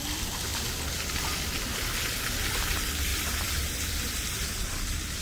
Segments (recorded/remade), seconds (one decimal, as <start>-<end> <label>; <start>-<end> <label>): 0.0-3.1 recorded; 3.1-4.7 remade; 4.7-5.2 recorded